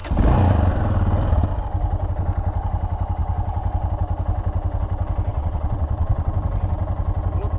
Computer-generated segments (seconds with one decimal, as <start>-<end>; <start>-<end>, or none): 5.3-6.3